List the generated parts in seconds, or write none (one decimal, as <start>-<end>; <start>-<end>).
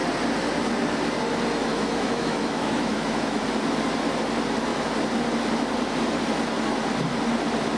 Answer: 1.7-3.4